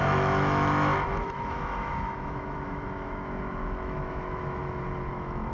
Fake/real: fake